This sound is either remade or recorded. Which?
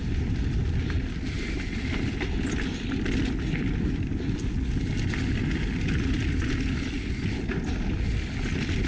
recorded